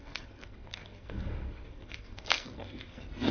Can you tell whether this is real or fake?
fake